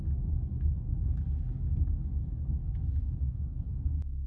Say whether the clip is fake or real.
fake